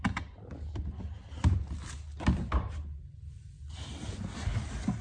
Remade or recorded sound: recorded